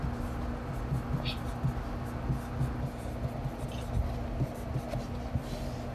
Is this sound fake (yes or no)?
no